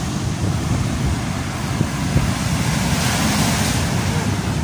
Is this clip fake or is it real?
real